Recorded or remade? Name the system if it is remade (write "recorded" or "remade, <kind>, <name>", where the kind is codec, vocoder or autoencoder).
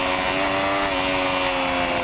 recorded